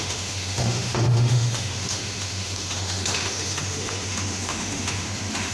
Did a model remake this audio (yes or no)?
yes